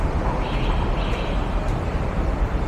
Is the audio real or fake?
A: fake